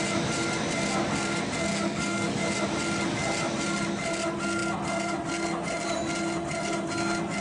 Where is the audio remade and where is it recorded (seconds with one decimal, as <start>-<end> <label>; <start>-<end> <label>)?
0.0-1.7 recorded; 1.7-2.4 remade; 2.4-7.4 recorded